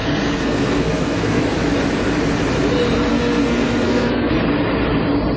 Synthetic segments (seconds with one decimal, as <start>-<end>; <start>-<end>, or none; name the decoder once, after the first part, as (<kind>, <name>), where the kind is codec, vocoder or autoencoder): 0.0-1.4 (codec, SNAC); 3.1-4.3